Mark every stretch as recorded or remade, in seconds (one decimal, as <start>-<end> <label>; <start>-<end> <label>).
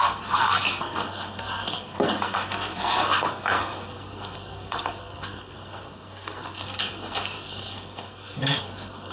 0.0-9.1 remade